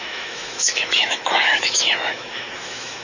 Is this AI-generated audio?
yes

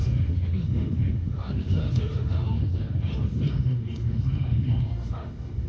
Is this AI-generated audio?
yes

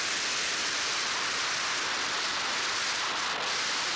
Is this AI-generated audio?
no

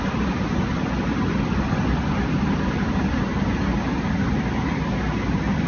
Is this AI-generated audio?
no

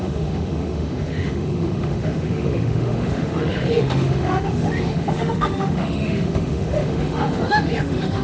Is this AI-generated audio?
yes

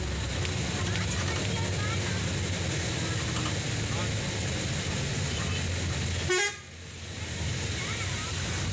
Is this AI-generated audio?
no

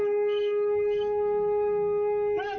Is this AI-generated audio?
yes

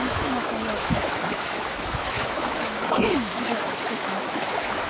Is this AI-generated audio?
yes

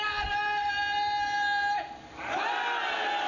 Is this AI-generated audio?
no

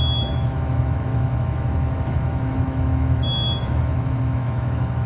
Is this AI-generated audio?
yes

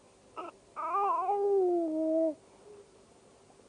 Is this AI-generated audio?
no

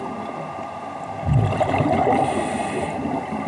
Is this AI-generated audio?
no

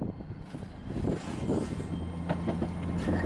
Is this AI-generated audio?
no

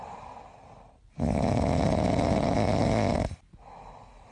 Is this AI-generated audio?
no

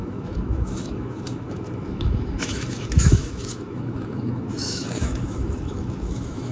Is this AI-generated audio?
yes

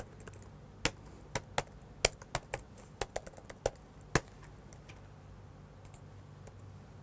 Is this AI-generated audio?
no